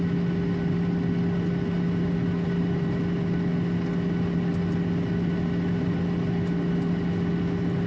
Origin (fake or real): real